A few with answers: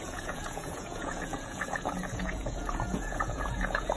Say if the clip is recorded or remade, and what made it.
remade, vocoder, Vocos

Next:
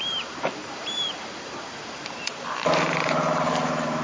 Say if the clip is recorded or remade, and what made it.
remade, vocoder, BigVGAN v2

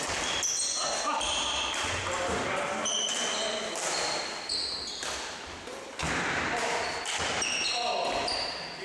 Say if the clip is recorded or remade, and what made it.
recorded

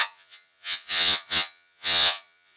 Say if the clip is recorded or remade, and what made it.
remade, vocoder, Vocos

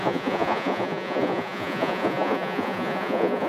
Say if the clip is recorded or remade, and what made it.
remade, vocoder, Vocos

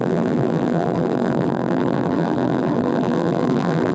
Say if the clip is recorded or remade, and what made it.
remade, vocoder, BigVGAN v2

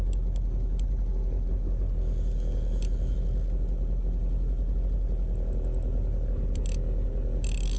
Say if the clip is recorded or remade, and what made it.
recorded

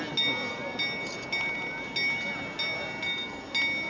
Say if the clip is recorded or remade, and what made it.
recorded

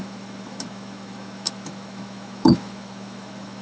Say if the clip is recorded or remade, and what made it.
remade, autoencoder, DAC-VAE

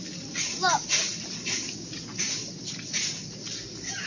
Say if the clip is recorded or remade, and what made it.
recorded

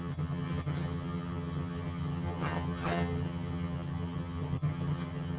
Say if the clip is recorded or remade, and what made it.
remade, vocoder, HiFi-GAN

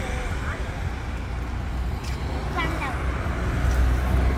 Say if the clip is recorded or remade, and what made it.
recorded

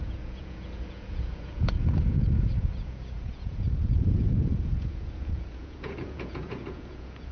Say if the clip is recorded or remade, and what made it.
remade, vocoder, Vocos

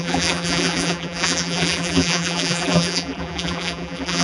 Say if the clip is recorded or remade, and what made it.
remade, vocoder, BigVGAN v2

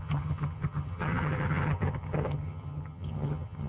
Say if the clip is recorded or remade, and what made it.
remade, vocoder, HiFi-GAN